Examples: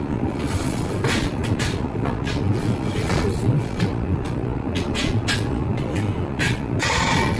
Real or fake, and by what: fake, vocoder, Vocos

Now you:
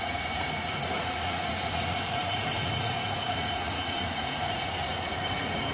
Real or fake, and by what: fake, vocoder, Vocos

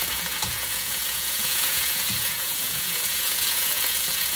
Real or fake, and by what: fake, vocoder, Vocos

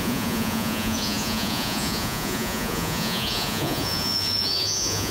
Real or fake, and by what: fake, vocoder, Vocos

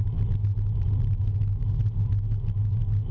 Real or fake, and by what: real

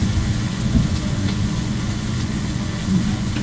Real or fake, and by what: fake, vocoder, Vocos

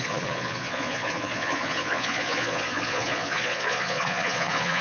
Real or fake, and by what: fake, vocoder, Vocos